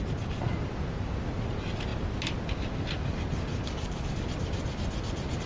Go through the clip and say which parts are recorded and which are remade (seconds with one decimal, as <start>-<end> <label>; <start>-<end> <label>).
0.0-3.5 recorded; 3.5-4.3 remade; 4.3-5.5 recorded